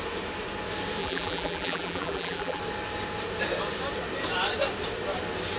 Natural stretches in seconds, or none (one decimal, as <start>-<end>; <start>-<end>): 0.0-1.0; 2.6-5.6